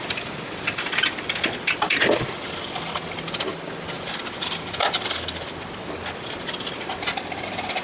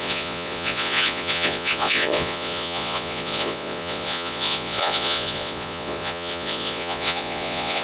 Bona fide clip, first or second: first